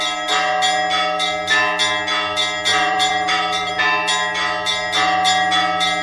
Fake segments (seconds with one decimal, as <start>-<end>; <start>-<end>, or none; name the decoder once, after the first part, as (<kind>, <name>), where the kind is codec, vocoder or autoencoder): 2.7-3.7 (vocoder, BigVGAN v2)